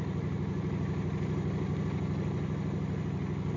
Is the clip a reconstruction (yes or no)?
no